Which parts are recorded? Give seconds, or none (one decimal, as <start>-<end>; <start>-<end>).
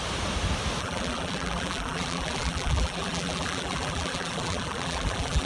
0.0-0.8